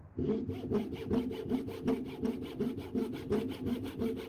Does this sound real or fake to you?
real